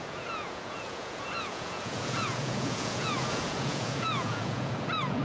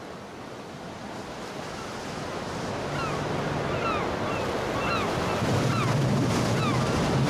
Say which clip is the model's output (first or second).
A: first